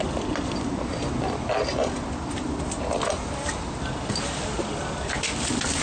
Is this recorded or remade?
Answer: recorded